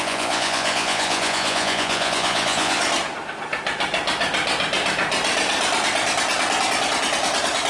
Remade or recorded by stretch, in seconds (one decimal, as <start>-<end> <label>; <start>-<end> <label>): 0.0-2.8 remade; 2.8-7.7 recorded